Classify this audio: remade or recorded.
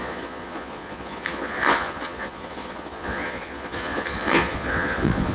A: remade